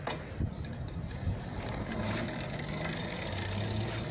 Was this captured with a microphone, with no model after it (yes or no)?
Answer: yes